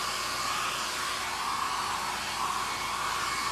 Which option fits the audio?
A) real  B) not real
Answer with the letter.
A